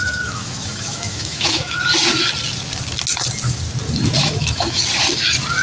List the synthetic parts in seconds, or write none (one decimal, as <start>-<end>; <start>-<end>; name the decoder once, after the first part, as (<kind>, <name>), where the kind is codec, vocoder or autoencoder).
0.0-1.8 (autoencoder, DAC-VAE); 4.2-4.8